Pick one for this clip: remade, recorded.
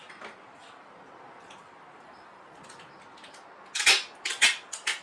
recorded